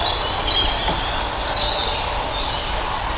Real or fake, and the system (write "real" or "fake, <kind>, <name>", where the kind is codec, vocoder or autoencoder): real